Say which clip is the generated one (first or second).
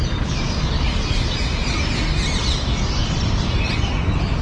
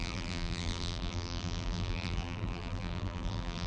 second